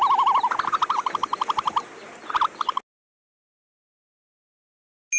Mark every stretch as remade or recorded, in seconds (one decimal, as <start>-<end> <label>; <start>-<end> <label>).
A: 0.0-5.2 recorded